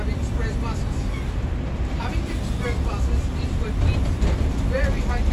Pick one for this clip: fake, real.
real